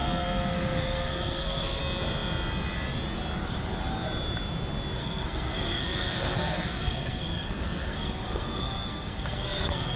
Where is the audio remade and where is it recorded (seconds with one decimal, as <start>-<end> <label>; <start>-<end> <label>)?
0.0-1.8 remade; 1.8-5.0 recorded; 5.0-10.0 remade